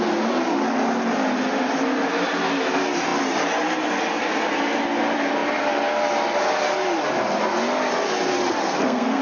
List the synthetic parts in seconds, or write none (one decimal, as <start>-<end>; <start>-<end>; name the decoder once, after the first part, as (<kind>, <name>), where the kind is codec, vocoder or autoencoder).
8.6-9.2 (codec, SNAC)